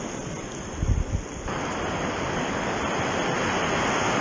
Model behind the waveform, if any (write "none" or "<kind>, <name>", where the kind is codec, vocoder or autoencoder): none